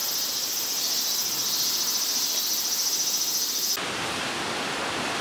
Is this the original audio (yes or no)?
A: yes